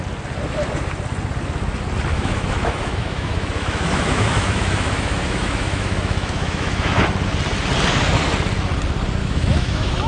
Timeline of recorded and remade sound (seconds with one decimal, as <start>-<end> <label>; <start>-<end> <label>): 0.0-2.1 recorded; 2.1-7.0 remade; 7.0-9.2 recorded; 9.2-10.1 remade